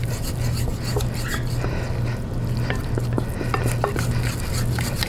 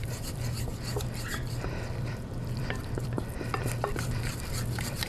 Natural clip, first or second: first